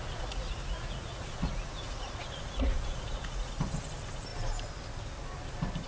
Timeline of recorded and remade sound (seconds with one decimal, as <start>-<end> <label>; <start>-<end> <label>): 0.0-3.5 remade; 3.5-5.9 recorded

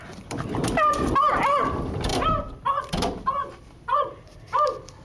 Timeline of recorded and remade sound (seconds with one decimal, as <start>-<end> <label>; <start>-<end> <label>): 0.0-5.0 remade

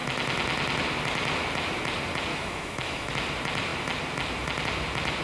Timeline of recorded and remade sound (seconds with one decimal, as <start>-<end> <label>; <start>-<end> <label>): 0.0-2.3 recorded; 2.3-3.1 remade; 3.1-5.2 recorded

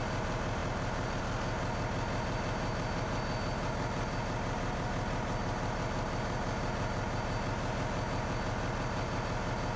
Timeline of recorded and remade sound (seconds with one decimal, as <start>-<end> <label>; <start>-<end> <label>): 0.0-9.8 recorded

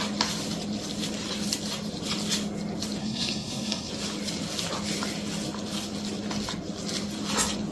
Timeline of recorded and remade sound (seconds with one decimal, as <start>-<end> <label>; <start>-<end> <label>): 0.0-3.0 recorded; 3.0-3.9 remade; 3.9-7.7 recorded

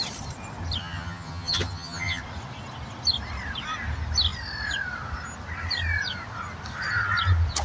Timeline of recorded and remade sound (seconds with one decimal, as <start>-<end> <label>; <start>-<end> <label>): 0.0-0.8 recorded; 0.8-2.2 remade; 2.2-7.6 recorded

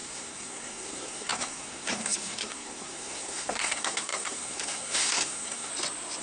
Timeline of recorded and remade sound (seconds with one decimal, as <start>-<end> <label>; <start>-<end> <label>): 0.0-5.7 remade; 5.7-6.2 recorded